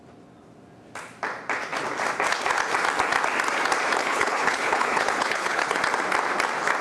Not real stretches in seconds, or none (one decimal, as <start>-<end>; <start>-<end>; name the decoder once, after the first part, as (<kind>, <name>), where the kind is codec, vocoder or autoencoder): 4.0-5.8 (codec, HILCodec)